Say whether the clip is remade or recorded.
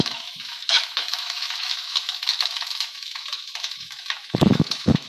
remade